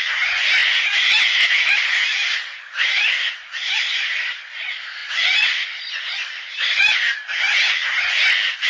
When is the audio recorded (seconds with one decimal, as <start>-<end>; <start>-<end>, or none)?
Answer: 0.0-3.6; 4.5-8.7